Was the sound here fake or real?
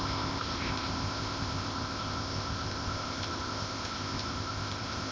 fake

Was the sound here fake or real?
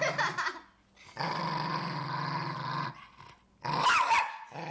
real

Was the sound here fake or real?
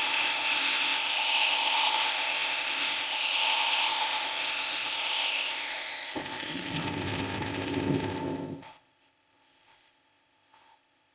fake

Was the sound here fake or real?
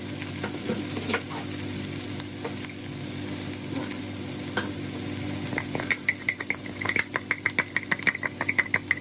real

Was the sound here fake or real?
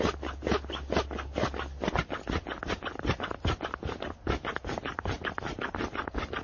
real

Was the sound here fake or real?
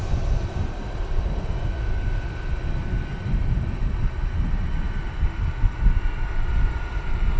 real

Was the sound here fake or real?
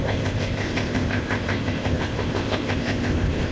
fake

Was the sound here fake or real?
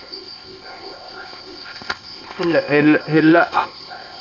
fake